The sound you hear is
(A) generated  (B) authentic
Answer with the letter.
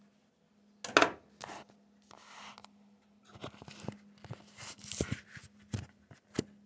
B